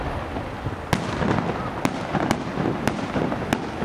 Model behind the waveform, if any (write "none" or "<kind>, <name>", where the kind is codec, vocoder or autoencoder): none